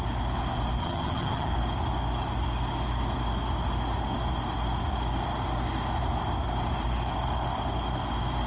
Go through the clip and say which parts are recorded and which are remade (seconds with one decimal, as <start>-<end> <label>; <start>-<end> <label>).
0.0-0.8 recorded; 0.8-1.5 remade; 1.5-8.5 recorded